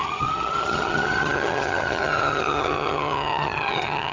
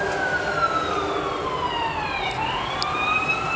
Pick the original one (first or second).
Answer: second